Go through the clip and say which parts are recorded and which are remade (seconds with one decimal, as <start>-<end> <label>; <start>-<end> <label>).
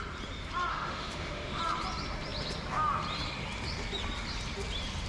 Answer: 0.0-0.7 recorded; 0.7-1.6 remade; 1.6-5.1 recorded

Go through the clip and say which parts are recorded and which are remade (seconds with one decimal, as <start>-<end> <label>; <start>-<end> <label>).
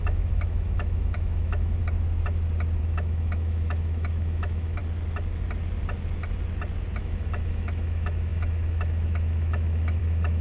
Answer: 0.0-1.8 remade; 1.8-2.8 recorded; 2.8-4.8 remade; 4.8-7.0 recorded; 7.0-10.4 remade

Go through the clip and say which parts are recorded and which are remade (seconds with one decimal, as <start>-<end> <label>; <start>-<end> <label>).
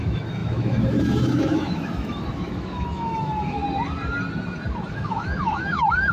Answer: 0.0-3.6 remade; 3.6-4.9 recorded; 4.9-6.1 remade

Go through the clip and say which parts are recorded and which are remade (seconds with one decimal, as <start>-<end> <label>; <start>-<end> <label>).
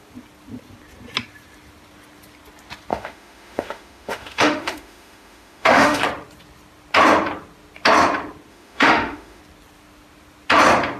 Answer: 0.0-2.9 recorded; 2.9-6.0 remade; 6.0-8.5 recorded; 8.5-9.4 remade; 9.4-11.0 recorded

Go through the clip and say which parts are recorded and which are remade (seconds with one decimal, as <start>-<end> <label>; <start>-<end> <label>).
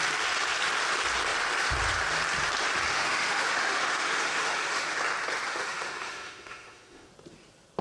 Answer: 0.0-2.9 recorded; 2.9-5.0 remade; 5.0-5.5 recorded; 5.5-7.1 remade; 7.1-7.8 recorded